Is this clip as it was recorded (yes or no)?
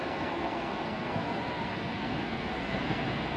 no